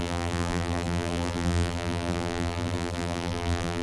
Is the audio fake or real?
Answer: fake